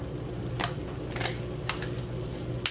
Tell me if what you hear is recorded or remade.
recorded